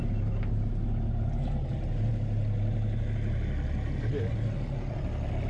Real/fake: real